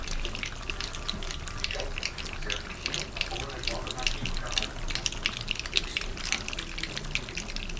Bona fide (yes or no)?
yes